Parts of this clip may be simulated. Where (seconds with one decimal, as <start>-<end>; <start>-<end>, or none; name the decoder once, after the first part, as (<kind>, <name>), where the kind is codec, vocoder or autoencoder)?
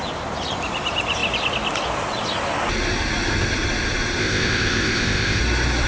4.2-5.4 (codec, ZipCodec)